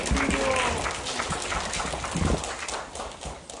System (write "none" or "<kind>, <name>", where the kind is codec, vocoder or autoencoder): none